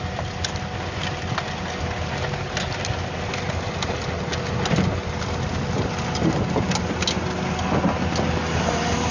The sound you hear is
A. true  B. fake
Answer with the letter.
A